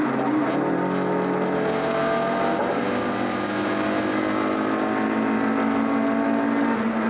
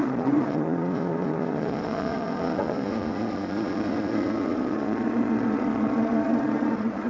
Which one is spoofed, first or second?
second